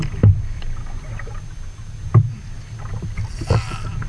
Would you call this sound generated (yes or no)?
no